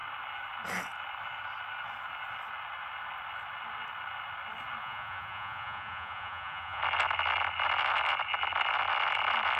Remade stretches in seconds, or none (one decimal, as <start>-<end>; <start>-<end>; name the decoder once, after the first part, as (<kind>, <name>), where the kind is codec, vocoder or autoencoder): 4.8-6.8 (vocoder, Vocos)